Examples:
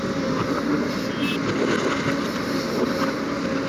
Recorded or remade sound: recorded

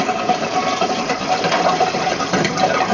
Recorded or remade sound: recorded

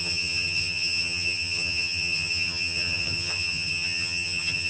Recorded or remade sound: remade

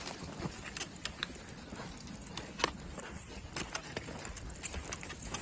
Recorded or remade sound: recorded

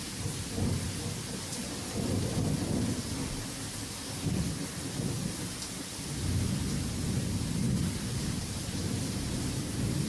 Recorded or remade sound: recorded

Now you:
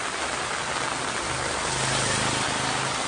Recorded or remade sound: recorded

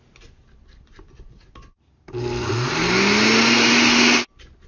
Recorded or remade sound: recorded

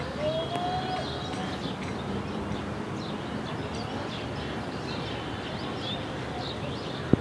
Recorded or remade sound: recorded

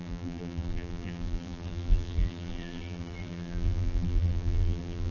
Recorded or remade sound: remade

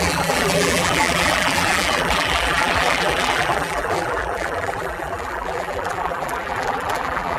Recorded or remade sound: remade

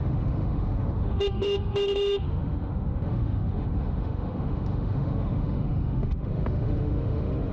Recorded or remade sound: remade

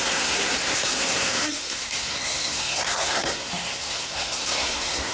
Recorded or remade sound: remade